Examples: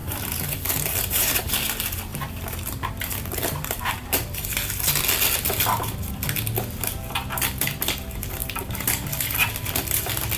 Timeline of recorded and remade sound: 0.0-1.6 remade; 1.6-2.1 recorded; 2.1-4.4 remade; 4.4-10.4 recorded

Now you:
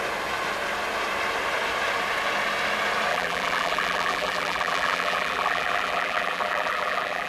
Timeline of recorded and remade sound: 0.0-3.1 recorded; 3.1-7.3 remade